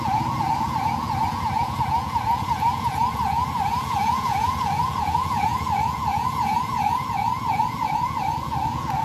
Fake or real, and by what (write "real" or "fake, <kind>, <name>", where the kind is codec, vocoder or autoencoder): fake, vocoder, Vocos